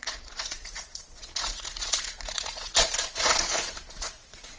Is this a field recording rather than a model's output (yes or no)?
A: no